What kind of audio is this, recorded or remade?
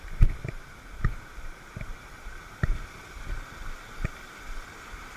recorded